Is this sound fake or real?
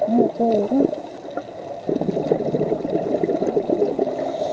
real